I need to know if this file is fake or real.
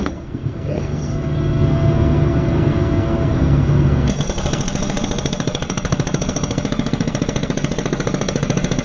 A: fake